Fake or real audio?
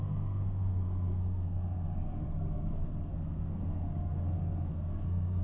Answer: fake